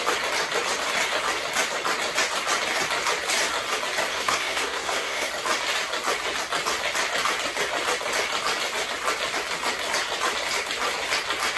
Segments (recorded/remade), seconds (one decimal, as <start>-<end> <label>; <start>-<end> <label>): 0.0-4.1 recorded; 4.1-5.3 remade; 5.3-11.6 recorded